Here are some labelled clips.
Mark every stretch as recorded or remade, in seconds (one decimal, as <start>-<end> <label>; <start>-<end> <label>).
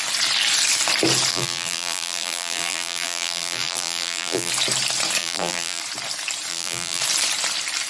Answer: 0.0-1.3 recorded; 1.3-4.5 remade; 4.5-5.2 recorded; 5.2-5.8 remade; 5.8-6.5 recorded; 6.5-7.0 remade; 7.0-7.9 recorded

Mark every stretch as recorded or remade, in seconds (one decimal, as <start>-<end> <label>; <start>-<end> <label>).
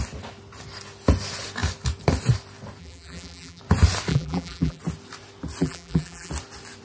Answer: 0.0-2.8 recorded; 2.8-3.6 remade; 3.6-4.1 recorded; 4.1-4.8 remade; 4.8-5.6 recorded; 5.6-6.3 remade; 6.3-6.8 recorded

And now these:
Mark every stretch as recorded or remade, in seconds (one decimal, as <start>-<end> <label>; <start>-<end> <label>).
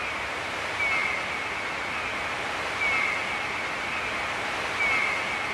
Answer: 0.0-5.5 recorded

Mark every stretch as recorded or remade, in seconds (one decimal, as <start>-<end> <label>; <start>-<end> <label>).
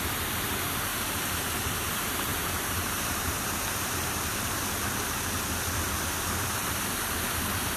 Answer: 0.0-0.9 recorded; 0.9-1.5 remade; 1.5-2.3 recorded; 2.3-4.1 remade; 4.1-7.8 recorded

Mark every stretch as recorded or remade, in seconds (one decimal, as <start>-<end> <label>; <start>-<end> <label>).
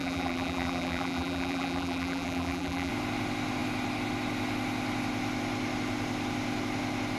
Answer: 0.0-2.9 remade; 2.9-7.2 recorded